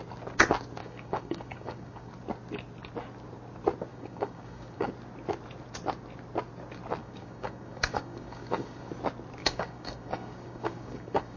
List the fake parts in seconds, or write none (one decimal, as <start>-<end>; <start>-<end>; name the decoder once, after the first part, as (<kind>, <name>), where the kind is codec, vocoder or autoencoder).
0.8-2.1 (codec, DAC); 3.9-4.9; 7.0-8.9; 9.4-11.4